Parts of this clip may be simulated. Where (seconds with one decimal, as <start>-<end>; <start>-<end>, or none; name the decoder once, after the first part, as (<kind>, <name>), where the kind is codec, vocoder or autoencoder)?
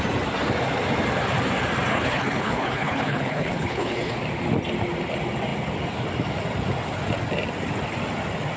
1.9-4.2 (codec, HILCodec)